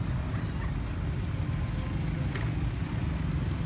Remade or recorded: recorded